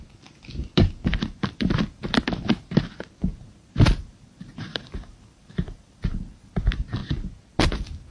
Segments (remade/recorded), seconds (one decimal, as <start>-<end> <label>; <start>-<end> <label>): 0.0-1.1 recorded; 1.1-2.1 remade; 2.1-3.3 recorded; 3.3-6.5 remade; 6.5-8.1 recorded